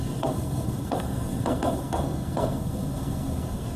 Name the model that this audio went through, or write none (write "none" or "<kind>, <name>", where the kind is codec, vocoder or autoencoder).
codec, SNAC